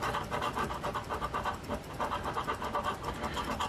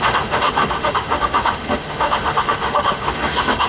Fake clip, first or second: second